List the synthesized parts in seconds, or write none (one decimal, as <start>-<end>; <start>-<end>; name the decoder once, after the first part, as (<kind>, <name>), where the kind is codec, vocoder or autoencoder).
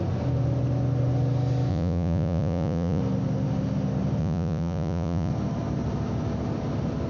1.7-3.0 (vocoder, Vocos); 4.2-5.3